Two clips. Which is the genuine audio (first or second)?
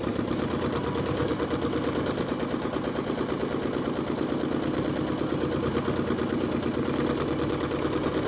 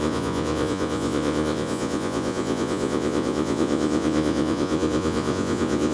first